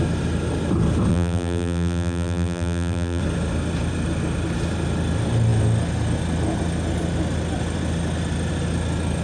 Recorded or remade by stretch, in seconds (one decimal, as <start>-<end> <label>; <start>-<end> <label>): 0.0-1.1 recorded; 1.1-3.2 remade; 3.2-9.2 recorded